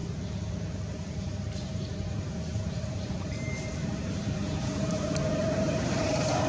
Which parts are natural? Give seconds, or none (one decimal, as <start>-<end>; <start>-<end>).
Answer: 0.0-0.8